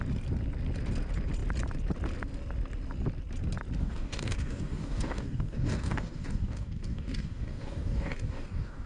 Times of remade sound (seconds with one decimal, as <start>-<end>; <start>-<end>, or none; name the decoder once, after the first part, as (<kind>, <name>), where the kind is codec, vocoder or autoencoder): 3.8-8.9 (codec, DAC)